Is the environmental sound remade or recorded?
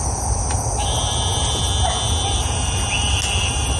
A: recorded